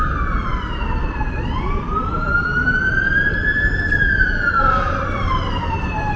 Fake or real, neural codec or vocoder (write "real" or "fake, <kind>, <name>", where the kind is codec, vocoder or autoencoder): fake, vocoder, BigVGAN v2